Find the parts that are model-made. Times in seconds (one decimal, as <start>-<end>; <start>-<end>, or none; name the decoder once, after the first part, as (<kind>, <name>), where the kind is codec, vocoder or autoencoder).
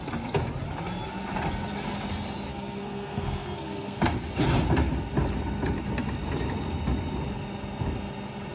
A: 2.5-4.0 (codec, SNAC)